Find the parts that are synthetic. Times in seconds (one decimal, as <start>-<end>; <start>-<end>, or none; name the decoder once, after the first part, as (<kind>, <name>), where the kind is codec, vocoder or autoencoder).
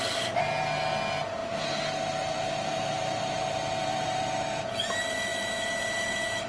1.4-4.2 (vocoder, BigVGAN v2)